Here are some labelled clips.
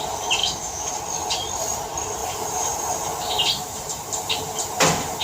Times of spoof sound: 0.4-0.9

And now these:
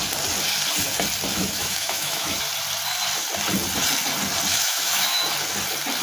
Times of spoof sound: 1.3-2.4; 4.5-5.2

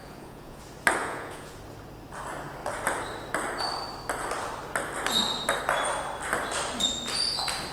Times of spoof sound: 0.0-0.6; 1.0-1.6

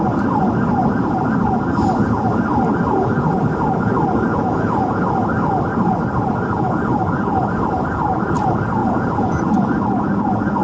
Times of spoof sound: 4.3-5.0; 8.8-9.4

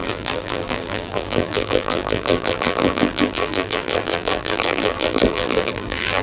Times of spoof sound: 0.0-6.2

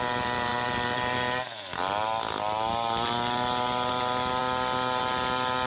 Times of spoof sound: none